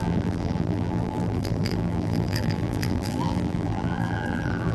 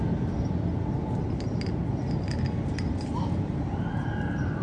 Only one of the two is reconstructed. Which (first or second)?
first